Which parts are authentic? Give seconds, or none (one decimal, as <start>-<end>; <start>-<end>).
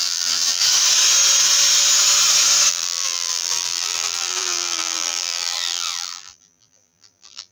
0.6-2.7